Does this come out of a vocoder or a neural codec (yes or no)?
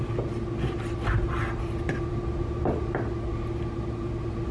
no